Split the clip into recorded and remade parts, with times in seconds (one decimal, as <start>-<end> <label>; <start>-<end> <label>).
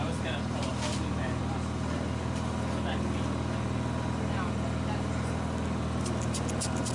0.0-0.7 recorded; 0.7-1.4 remade; 1.4-6.9 recorded